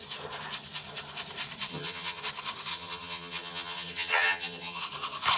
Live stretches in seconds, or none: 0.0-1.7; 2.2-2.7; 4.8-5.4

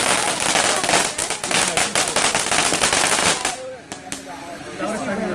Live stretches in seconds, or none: 0.0-5.3

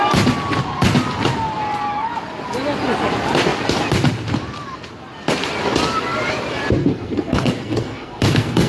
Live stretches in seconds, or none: 0.0-6.8

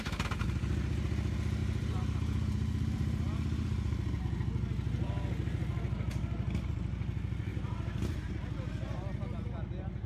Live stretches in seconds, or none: 0.0-1.6; 4.2-7.5; 8.3-10.1